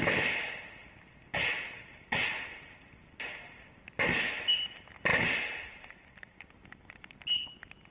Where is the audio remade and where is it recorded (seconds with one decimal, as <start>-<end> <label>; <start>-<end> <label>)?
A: 0.0-5.1 recorded; 5.1-6.4 remade; 6.4-7.9 recorded